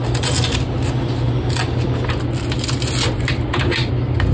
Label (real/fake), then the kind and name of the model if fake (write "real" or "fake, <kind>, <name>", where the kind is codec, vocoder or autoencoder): real